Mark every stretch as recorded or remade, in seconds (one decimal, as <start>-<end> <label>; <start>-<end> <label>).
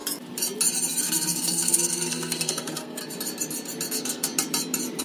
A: 0.0-1.0 recorded; 1.0-3.0 remade; 3.0-3.9 recorded; 3.9-4.3 remade; 4.3-5.0 recorded